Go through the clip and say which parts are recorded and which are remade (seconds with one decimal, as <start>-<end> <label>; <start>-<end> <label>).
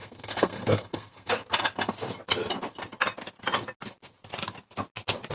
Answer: 0.0-1.3 remade; 1.3-5.3 recorded